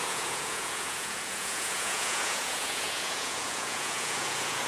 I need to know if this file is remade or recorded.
remade